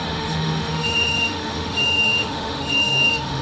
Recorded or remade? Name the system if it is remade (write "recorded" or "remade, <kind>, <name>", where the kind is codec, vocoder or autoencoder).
remade, autoencoder, DAC-VAE